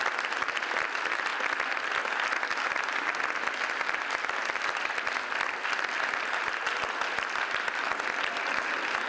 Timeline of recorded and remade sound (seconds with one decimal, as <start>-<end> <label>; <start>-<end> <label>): 0.0-9.1 recorded